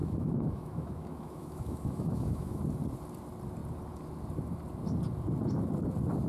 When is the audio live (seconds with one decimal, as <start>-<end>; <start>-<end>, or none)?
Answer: 2.6-6.3